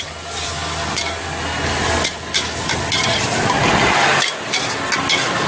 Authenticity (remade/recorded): recorded